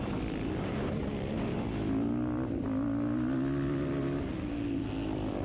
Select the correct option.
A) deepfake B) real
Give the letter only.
B